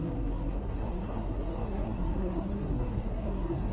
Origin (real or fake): fake